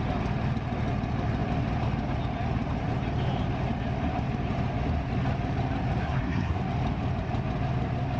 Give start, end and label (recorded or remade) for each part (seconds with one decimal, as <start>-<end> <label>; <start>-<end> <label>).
0.0-6.0 recorded; 6.0-6.6 remade; 6.6-8.2 recorded